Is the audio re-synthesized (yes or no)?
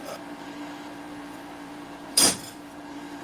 yes